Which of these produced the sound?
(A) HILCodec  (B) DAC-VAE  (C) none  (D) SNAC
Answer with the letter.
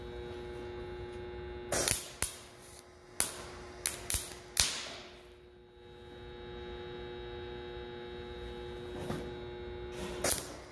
C